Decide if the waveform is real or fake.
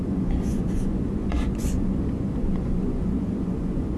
fake